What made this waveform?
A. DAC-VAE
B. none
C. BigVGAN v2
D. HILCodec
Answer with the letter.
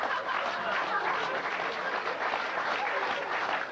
B